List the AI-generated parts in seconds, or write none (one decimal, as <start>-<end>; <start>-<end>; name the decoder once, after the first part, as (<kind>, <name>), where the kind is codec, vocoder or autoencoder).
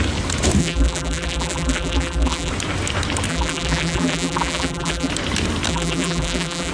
0.6-2.5 (vocoder, BigVGAN v2); 3.3-5.1; 5.7-6.7